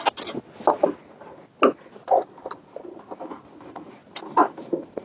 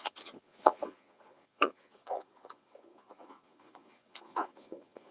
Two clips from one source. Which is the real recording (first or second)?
first